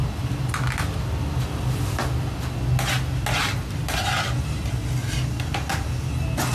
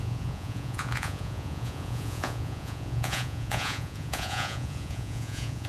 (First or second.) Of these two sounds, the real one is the first